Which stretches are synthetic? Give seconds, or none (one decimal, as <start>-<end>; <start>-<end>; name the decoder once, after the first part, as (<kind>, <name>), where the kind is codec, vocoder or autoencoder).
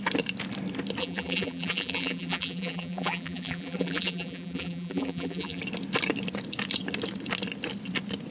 1.0-5.6 (vocoder, BigVGAN v2)